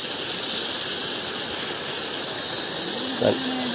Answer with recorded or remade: recorded